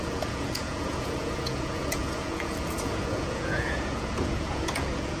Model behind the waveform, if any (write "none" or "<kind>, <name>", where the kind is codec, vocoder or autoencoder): vocoder, Vocos